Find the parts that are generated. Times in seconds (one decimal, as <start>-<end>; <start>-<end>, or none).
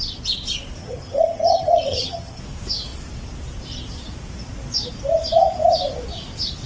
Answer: 0.8-2.4